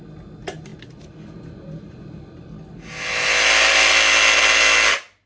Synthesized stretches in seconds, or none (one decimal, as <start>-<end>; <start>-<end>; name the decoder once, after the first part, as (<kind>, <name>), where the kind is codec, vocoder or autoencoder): none